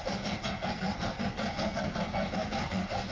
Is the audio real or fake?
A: fake